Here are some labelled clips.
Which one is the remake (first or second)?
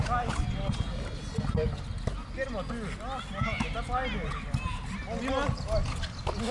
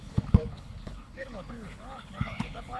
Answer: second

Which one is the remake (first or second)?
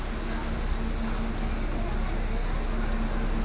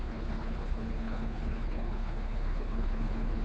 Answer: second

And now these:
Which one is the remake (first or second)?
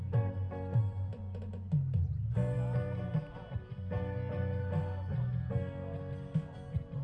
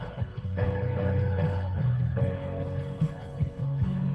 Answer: second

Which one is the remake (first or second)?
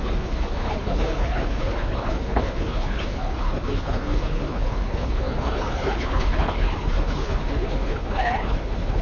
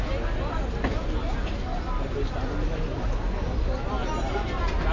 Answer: first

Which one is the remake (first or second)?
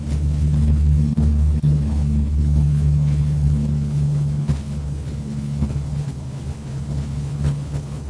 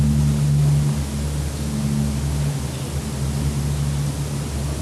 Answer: first